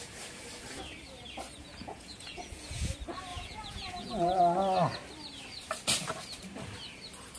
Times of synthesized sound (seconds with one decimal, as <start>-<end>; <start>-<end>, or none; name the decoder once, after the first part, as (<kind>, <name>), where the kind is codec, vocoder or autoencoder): 1.6-2.9 (vocoder, Vocos); 3.3-4.4